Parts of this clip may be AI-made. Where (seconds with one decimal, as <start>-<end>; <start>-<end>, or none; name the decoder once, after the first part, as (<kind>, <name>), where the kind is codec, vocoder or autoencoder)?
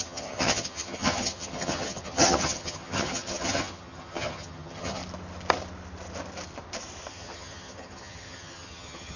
0.0-5.0 (vocoder, HiFi-GAN); 7.1-9.2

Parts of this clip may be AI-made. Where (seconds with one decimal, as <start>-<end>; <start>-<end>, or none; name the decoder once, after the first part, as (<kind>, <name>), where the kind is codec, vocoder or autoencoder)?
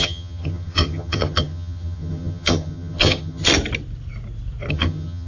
0.0-3.5 (vocoder, HiFi-GAN); 4.7-5.3